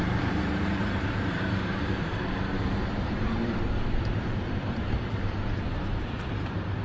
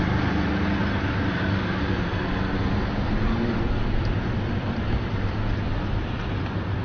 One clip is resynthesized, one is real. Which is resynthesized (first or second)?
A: first